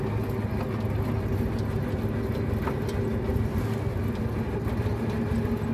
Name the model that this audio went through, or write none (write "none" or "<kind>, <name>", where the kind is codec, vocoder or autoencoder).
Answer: none